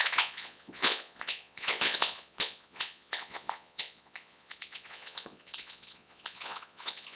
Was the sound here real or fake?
fake